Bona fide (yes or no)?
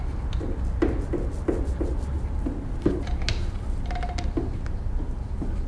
yes